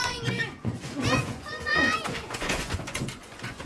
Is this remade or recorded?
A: remade